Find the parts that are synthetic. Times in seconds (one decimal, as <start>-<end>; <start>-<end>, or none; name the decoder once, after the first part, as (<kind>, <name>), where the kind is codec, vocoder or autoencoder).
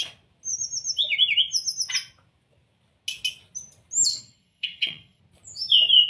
4.1-5.2 (vocoder, WaveNeXt)